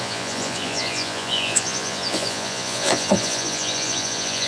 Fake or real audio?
fake